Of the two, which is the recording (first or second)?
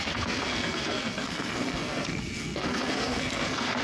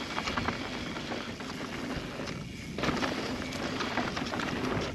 second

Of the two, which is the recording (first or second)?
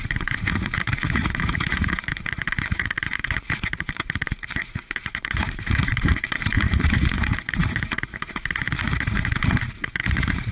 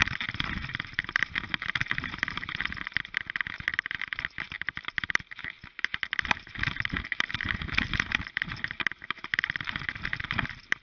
second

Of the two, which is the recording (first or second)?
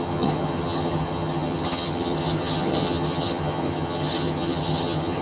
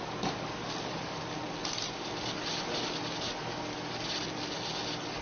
second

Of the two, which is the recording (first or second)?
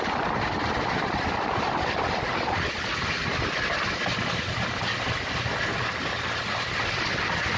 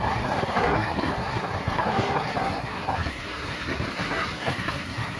first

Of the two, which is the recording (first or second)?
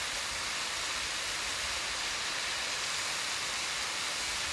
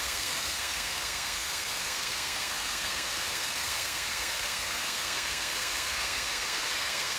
first